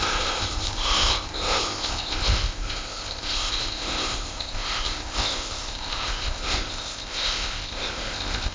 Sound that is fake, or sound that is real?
fake